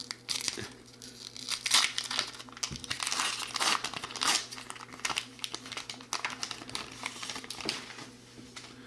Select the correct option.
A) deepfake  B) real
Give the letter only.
B